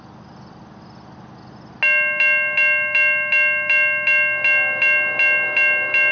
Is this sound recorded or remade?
recorded